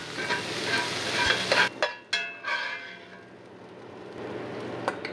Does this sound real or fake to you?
real